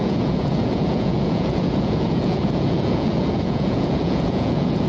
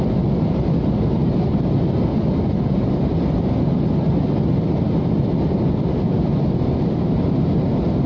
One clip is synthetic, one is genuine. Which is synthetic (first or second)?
first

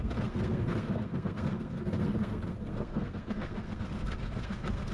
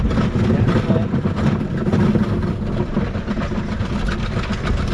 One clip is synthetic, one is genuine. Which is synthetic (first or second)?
first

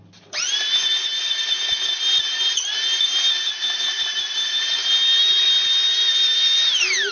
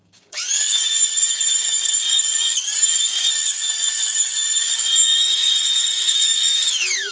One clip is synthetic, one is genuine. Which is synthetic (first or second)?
second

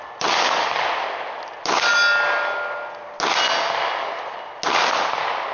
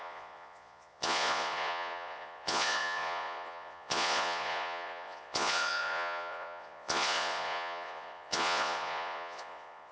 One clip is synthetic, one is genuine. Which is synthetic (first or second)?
second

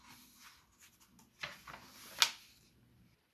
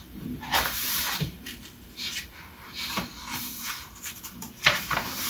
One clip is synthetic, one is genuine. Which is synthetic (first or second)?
second